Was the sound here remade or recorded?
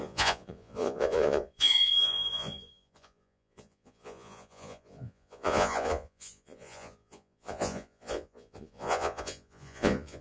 remade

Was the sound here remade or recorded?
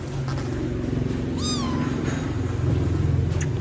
recorded